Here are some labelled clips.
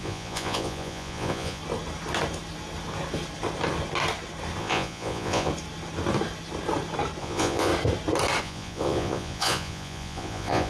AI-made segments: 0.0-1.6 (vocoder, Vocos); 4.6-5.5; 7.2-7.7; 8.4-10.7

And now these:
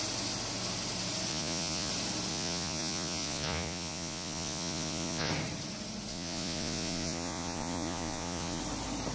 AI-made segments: 1.3-1.9 (vocoder, Vocos); 2.3-5.3; 6.1-8.6

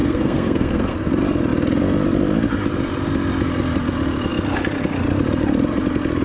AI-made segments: 0.0-1.1 (codec, SNAC)

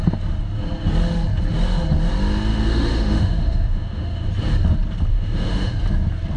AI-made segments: 2.5-4.3 (autoencoder, DAC-VAE); 5.1-5.7

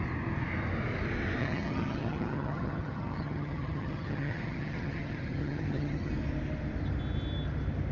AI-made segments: 1.4-6.1 (vocoder, HiFi-GAN)